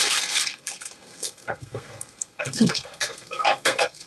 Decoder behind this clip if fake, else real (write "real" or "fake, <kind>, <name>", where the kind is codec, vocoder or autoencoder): fake, codec, SNAC